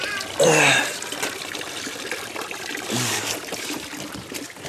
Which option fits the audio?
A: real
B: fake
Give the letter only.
B